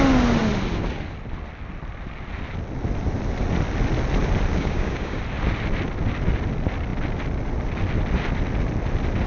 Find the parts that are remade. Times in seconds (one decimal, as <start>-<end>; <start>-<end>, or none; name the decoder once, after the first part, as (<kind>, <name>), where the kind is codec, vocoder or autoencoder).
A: 4.5-5.2 (codec, DAC)